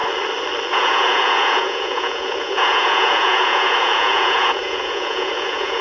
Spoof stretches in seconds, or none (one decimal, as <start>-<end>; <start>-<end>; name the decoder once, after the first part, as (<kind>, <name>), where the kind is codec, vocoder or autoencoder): 0.7-5.8 (vocoder, Vocos)